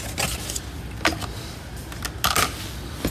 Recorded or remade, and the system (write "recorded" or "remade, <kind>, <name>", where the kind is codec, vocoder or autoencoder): recorded